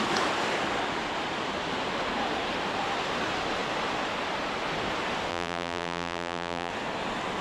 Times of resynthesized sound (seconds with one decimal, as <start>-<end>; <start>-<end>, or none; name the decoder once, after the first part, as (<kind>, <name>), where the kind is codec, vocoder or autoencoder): 5.3-6.7 (vocoder, BigVGAN v2)